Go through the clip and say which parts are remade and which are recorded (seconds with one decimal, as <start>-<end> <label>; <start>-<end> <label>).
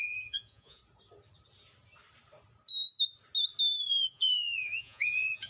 0.0-0.8 remade; 0.8-4.1 recorded; 4.1-5.5 remade